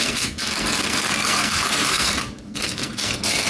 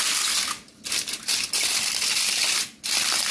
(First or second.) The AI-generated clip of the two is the first